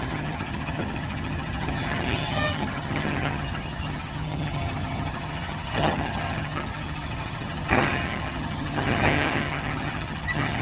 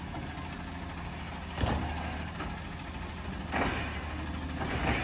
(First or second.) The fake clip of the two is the first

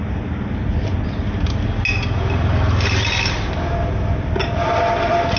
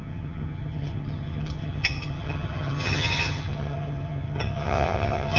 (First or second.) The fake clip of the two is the second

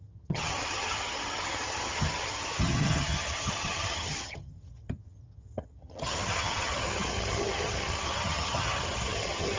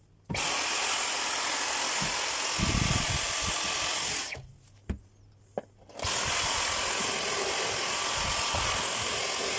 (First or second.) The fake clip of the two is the first